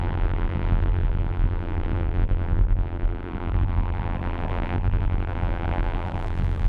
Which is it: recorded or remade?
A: remade